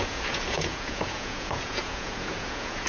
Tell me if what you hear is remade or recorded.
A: remade